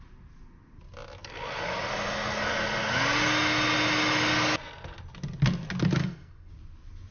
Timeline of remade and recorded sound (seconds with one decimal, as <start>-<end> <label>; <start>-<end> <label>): 0.0-6.0 recorded; 6.0-6.5 remade; 6.5-7.1 recorded